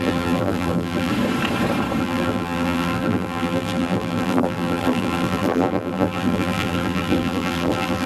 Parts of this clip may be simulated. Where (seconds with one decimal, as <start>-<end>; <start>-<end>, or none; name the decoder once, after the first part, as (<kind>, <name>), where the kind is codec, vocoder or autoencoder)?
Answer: 0.0-1.1 (vocoder, BigVGAN v2); 2.0-8.1